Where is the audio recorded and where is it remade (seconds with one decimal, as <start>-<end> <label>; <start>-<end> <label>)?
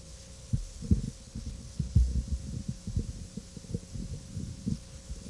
0.0-2.1 remade; 2.1-4.7 recorded; 4.7-5.3 remade